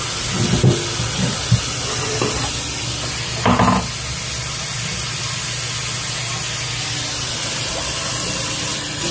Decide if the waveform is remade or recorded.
recorded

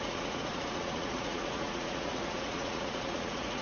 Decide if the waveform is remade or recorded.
remade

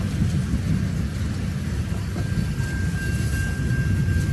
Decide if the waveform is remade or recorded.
recorded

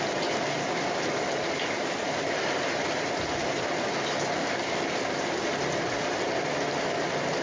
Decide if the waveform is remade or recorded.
recorded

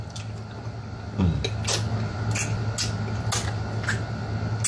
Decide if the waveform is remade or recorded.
recorded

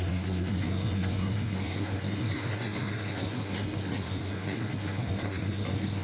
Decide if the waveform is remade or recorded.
remade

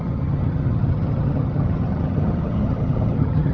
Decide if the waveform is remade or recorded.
remade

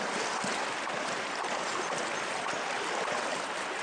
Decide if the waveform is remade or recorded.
recorded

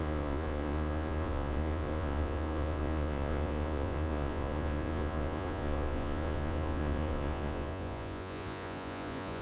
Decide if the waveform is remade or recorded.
remade